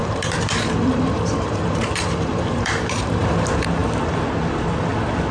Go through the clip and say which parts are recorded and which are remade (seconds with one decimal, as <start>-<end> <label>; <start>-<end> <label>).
0.0-3.2 remade; 3.2-5.3 recorded

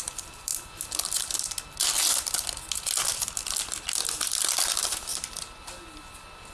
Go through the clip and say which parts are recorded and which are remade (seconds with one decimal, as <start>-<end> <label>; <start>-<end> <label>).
0.0-0.5 remade; 0.5-4.4 recorded; 4.4-5.1 remade; 5.1-6.5 recorded